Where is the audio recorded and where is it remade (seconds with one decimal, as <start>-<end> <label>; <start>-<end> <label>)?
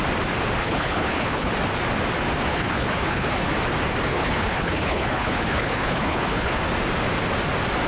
0.0-0.6 recorded; 0.6-1.5 remade; 1.5-2.5 recorded; 2.5-3.5 remade; 3.5-4.1 recorded; 4.1-6.5 remade; 6.5-7.9 recorded